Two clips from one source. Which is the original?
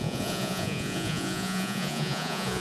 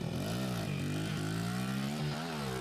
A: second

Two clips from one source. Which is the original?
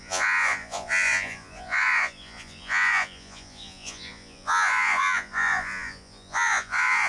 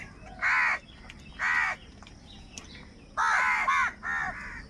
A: second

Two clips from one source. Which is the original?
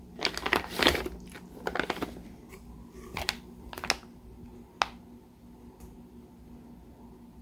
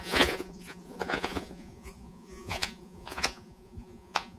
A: first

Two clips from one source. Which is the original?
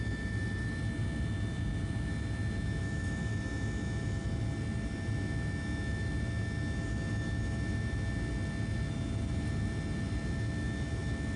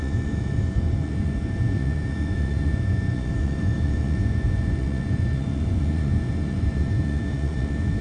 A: first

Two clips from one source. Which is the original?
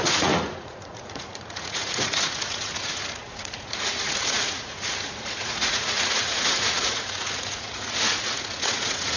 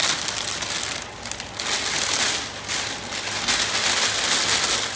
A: second